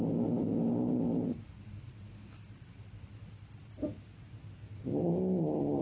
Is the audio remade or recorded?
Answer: recorded